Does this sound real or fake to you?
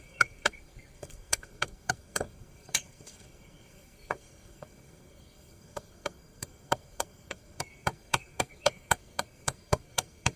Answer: fake